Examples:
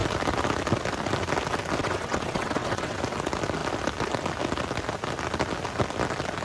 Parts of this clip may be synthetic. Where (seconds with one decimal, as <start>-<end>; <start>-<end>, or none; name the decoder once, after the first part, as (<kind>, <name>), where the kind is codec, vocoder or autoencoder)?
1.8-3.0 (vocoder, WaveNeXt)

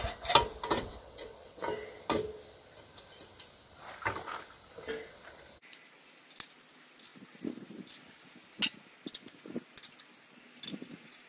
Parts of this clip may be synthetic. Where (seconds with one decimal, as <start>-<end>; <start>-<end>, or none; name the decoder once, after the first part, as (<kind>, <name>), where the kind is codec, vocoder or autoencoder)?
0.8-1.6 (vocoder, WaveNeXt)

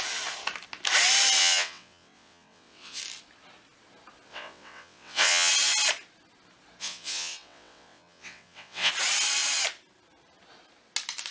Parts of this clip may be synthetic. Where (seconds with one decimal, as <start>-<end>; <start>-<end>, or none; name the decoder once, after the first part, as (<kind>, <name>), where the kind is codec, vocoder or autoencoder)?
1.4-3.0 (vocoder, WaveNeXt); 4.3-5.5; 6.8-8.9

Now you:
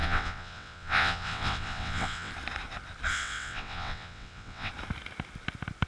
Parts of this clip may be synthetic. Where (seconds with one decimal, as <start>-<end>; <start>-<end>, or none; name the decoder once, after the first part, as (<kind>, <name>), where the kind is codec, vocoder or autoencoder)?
0.0-2.3 (vocoder, WaveNeXt); 3.1-4.7

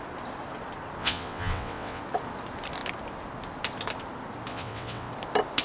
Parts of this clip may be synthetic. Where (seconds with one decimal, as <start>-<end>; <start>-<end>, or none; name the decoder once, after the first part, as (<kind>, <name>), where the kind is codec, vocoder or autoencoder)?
1.0-2.0 (vocoder, WaveNeXt); 4.5-5.1

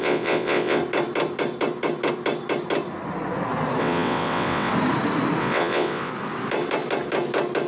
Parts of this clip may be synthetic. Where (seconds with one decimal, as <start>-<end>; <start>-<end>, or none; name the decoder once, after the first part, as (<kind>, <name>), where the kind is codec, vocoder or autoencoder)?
0.0-0.8 (vocoder, WaveNeXt); 3.8-4.7; 5.4-6.1

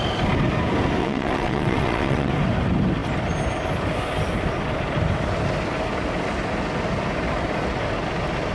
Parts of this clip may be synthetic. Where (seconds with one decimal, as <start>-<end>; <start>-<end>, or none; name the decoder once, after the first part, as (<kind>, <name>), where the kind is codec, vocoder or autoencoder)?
1.0-2.3 (vocoder, WaveNeXt)